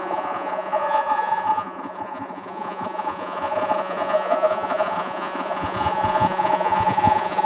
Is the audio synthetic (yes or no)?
yes